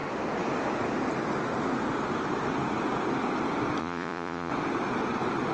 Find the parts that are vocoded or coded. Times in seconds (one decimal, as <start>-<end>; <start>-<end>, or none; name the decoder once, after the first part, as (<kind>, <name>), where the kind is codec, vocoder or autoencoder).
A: 3.8-4.5 (vocoder, Vocos)